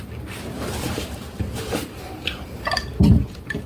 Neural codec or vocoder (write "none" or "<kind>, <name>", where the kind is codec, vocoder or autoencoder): vocoder, BigVGAN v2